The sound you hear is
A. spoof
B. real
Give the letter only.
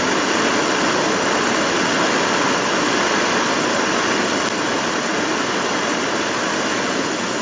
B